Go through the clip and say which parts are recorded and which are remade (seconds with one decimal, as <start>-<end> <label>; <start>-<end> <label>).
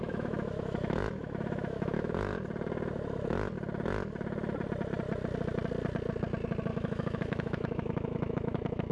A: 0.0-2.3 remade; 2.3-6.7 recorded; 6.7-8.9 remade